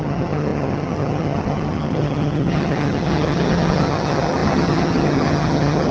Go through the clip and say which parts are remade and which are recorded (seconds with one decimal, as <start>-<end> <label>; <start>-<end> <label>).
0.0-5.9 remade